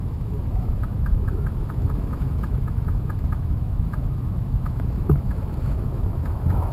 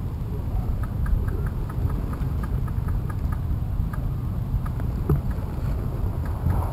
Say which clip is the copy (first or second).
first